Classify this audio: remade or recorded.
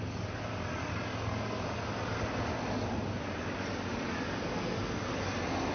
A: recorded